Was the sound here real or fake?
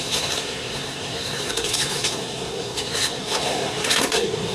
fake